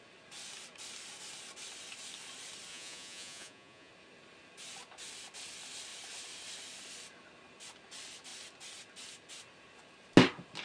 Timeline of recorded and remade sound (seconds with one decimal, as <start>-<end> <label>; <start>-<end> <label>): 0.0-2.7 recorded; 2.7-3.9 remade; 3.9-10.6 recorded